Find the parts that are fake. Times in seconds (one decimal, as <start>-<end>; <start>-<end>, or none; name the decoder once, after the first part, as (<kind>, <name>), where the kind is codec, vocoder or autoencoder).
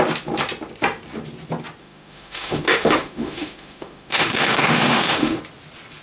1.8-5.4 (autoencoder, DAC-VAE)